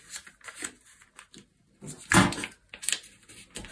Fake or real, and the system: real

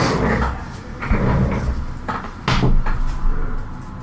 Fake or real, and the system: real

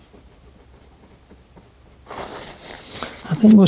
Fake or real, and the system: real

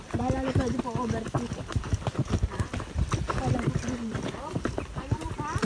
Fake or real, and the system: real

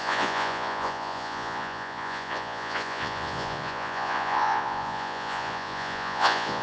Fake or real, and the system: fake, vocoder, Vocos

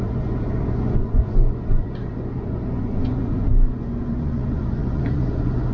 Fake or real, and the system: fake, vocoder, Vocos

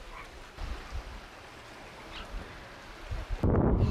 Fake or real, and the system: real